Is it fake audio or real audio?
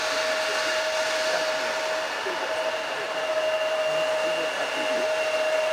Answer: real